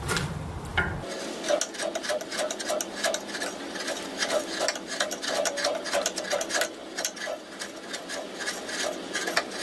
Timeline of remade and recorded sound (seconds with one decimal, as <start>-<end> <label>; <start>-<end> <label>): 0.0-9.6 recorded